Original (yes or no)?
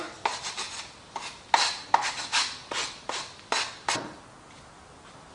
yes